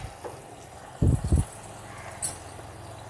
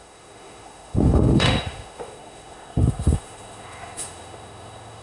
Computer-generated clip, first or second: second